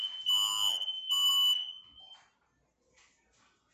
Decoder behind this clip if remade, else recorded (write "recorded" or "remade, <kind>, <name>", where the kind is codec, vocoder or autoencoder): recorded